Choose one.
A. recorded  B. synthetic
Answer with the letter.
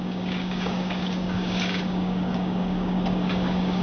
B